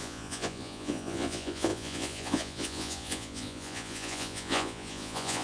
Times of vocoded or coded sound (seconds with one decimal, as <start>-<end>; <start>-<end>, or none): 0.0-5.4